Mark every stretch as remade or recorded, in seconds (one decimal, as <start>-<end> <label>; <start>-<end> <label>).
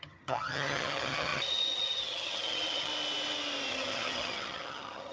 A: 0.0-2.9 remade; 2.9-3.7 recorded; 3.7-5.1 remade